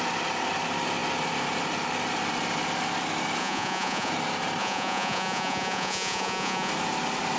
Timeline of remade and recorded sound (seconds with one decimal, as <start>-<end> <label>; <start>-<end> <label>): 0.0-3.4 recorded; 3.4-4.1 remade; 4.1-4.6 recorded; 4.6-6.7 remade; 6.7-7.4 recorded